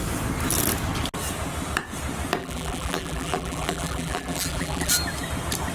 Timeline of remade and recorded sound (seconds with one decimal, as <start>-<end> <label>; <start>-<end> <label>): 0.0-2.4 recorded; 2.4-4.9 remade; 4.9-5.7 recorded

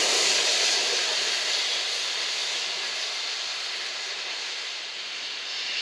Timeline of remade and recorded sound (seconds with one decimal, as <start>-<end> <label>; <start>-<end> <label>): 0.0-1.2 remade; 1.2-5.8 recorded

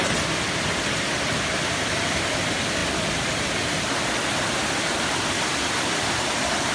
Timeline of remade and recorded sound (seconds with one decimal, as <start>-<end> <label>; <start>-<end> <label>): 0.0-6.7 remade

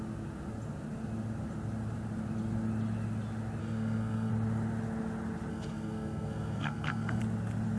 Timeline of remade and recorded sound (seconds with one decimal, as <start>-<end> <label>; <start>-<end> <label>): 0.0-3.6 recorded; 3.6-4.3 remade; 4.3-5.5 recorded; 5.5-7.2 remade; 7.2-7.8 recorded